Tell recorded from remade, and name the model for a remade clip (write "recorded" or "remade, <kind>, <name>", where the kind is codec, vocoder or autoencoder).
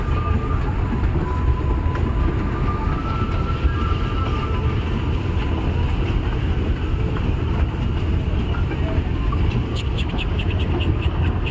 recorded